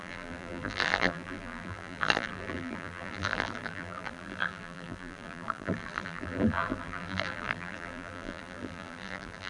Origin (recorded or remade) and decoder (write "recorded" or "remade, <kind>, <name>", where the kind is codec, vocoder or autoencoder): remade, vocoder, BigVGAN v2